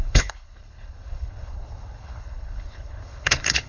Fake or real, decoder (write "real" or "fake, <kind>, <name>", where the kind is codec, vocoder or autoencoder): fake, codec, HILCodec